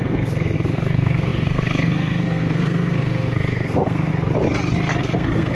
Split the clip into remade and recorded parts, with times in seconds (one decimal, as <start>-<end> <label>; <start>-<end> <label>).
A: 0.0-4.1 remade; 4.1-5.0 recorded; 5.0-5.5 remade